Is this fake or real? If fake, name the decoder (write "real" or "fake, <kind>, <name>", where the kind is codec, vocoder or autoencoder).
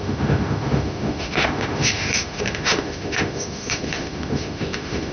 fake, autoencoder, DAC-VAE